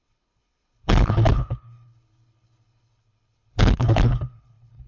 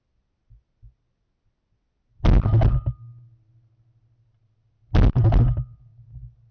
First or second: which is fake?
first